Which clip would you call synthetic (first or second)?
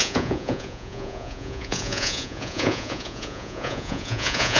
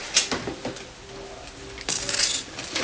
first